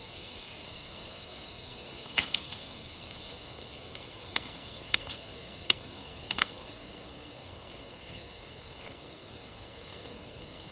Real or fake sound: fake